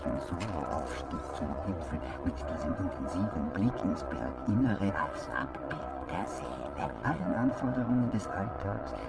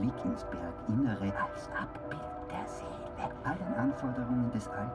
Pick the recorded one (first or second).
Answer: second